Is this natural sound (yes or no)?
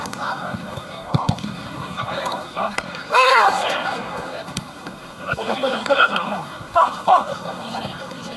no